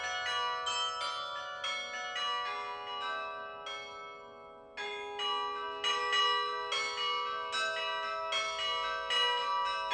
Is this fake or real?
real